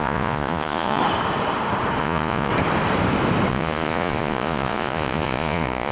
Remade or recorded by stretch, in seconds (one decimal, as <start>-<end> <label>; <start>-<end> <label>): 0.0-1.0 remade; 1.0-2.0 recorded; 2.0-2.5 remade; 2.5-3.5 recorded; 3.5-5.9 remade